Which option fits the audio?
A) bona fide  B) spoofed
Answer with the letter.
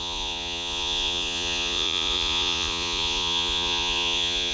B